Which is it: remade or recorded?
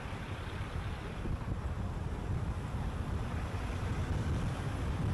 recorded